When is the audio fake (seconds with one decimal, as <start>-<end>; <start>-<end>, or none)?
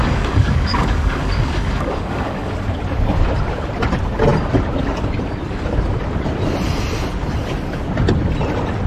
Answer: 0.0-2.5